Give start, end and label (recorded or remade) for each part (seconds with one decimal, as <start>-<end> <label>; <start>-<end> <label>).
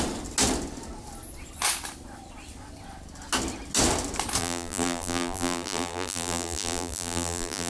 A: 0.0-4.4 recorded; 4.4-7.7 remade